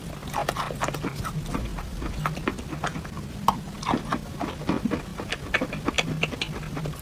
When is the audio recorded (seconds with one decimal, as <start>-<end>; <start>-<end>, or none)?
0.0-7.0